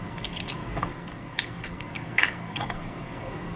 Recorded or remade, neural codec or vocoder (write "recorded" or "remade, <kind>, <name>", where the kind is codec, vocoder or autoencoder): remade, codec, SNAC